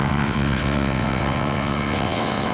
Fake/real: fake